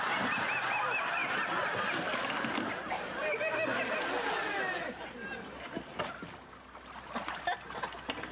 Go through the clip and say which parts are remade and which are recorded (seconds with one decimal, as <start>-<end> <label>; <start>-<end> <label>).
0.0-8.3 recorded